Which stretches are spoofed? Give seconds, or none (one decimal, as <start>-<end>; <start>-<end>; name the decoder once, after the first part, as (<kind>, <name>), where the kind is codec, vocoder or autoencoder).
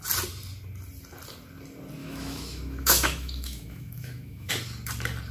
2.0-4.5 (autoencoder, DAC-VAE)